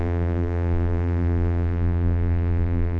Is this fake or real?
fake